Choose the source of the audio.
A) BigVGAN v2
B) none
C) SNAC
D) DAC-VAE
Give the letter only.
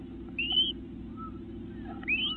B